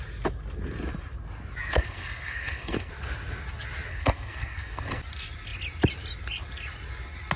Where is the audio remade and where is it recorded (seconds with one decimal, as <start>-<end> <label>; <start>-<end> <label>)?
0.0-1.6 recorded; 1.6-2.9 remade; 2.9-3.9 recorded; 3.9-5.0 remade; 5.0-7.4 recorded